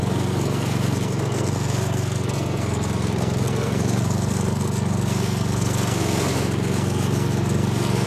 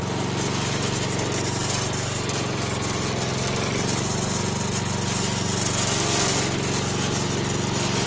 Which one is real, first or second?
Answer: second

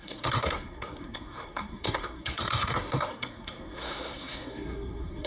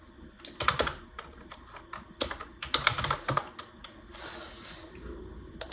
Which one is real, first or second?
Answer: second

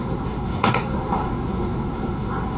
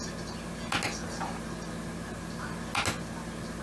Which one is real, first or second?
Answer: second